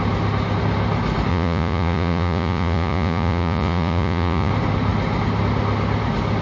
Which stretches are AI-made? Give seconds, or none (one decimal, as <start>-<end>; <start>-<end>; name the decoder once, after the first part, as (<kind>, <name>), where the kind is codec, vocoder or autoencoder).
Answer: 1.3-4.5 (vocoder, Vocos)